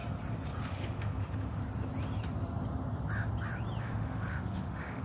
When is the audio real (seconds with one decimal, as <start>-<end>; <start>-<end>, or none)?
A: 0.0-0.6; 1.6-3.8